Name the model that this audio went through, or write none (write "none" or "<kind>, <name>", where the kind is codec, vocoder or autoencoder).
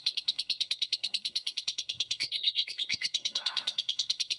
codec, SNAC